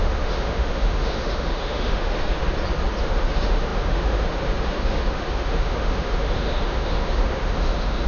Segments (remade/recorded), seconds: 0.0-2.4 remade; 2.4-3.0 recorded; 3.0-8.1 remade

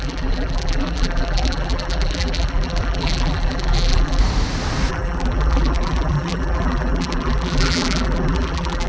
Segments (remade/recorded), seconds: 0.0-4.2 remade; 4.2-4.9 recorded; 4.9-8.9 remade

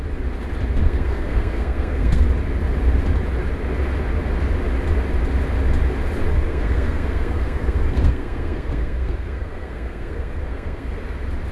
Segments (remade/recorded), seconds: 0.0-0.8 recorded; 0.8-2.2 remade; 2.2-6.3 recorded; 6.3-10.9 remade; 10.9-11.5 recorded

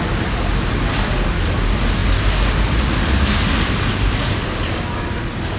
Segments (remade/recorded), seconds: 0.0-5.6 recorded

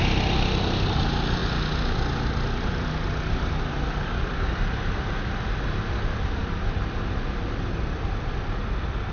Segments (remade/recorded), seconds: 0.0-9.1 recorded

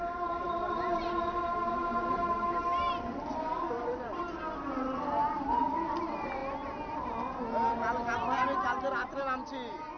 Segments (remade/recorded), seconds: 0.0-6.4 remade; 6.4-10.0 recorded

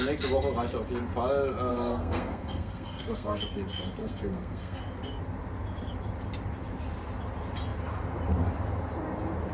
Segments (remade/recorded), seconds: 0.0-1.7 recorded; 1.7-3.4 remade; 3.4-4.0 recorded; 4.0-4.8 remade; 4.8-9.5 recorded